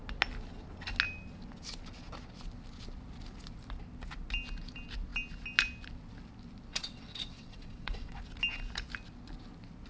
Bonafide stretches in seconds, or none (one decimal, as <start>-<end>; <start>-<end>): 0.0-6.7; 8.2-9.9